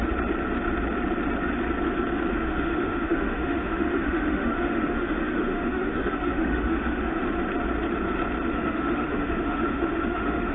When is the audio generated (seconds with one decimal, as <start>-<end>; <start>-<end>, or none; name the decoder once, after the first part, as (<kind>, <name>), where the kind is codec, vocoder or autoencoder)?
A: 2.3-7.2 (autoencoder, DAC-VAE); 8.5-10.5